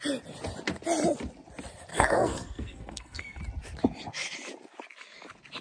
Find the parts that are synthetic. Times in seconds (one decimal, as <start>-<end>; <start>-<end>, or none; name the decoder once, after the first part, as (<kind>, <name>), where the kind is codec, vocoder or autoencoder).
1.9-3.4 (codec, SNAC)